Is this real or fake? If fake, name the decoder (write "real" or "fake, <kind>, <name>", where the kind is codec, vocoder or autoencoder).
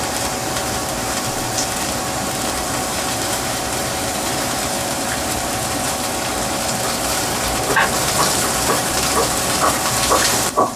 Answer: fake, vocoder, BigVGAN v2